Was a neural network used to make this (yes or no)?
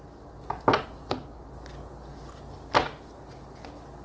no